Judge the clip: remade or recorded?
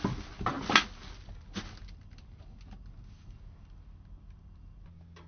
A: recorded